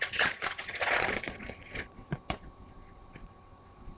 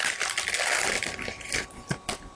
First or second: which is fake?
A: first